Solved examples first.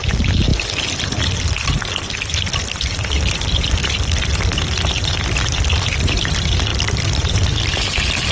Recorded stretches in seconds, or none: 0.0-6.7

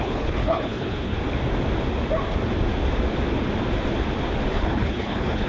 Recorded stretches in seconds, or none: 1.2-4.5

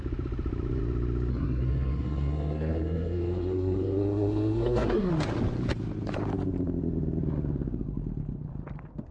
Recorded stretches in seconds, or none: 0.0-1.3; 5.1-9.1

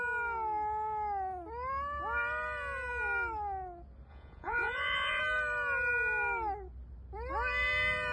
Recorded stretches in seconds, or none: 0.0-4.1; 5.2-8.1

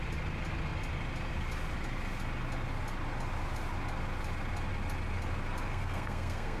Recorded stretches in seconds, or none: 0.0-5.7